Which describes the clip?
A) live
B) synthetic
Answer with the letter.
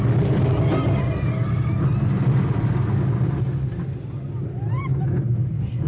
A